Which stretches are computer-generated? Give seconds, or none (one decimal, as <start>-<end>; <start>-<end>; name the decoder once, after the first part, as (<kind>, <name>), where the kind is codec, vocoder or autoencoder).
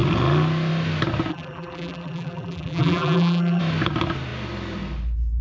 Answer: 1.3-3.6 (vocoder, BigVGAN v2)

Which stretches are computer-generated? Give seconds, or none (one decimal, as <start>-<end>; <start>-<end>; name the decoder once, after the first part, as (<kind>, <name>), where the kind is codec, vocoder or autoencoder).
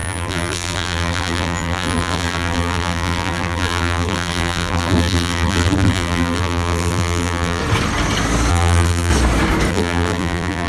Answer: 0.0-7.6 (vocoder, BigVGAN v2); 8.5-9.1; 9.7-10.7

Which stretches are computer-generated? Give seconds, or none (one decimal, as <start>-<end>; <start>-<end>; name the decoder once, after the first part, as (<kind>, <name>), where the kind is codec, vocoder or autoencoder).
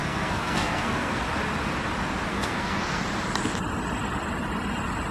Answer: 0.0-1.2 (codec, SNAC); 2.3-3.0